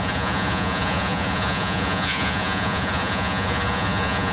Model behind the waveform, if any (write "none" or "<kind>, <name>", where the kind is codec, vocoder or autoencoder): vocoder, Vocos